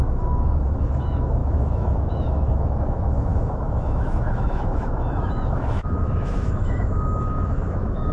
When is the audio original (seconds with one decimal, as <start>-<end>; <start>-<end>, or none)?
none